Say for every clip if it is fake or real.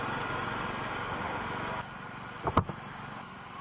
real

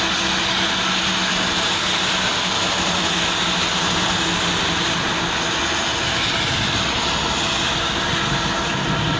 real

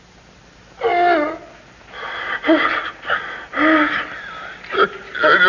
real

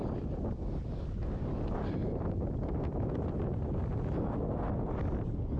real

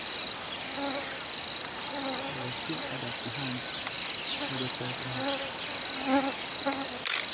real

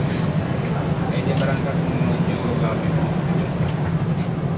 real